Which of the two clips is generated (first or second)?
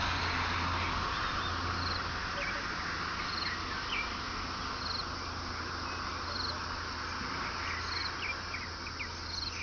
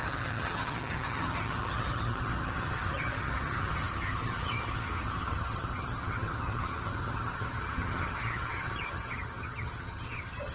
second